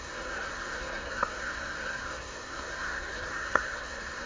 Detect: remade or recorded remade